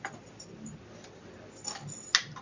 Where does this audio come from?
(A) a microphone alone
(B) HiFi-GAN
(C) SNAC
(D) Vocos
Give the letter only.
A